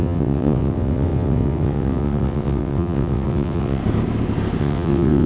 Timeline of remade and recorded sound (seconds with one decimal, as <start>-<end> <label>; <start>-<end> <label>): 0.0-3.8 remade; 3.8-4.6 recorded; 4.6-5.3 remade